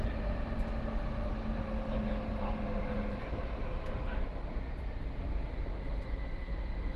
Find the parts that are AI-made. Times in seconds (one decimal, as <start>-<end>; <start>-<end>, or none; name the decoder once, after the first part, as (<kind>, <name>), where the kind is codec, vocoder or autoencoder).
none